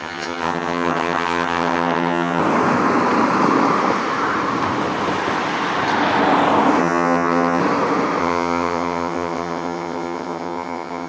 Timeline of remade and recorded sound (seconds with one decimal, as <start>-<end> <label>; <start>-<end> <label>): 0.0-2.4 remade; 2.4-6.8 recorded; 6.8-7.6 remade; 7.6-8.2 recorded; 8.2-11.1 remade